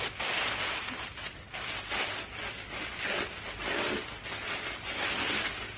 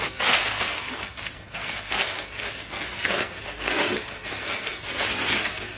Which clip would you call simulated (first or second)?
second